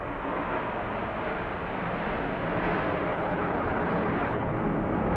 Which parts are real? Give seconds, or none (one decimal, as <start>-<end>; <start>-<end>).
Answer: 0.0-3.1; 4.6-5.2

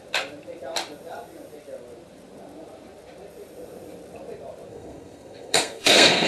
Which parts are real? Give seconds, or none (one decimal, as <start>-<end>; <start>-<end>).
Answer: 0.0-4.7